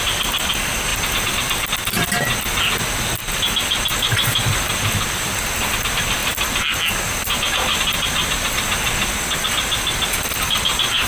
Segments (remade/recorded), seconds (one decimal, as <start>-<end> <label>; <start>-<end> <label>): 0.0-11.1 recorded